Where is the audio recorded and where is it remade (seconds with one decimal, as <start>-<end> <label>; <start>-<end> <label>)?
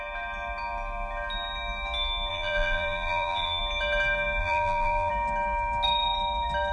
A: 0.0-2.3 recorded; 2.3-3.6 remade; 3.6-4.4 recorded; 4.4-5.1 remade; 5.1-6.7 recorded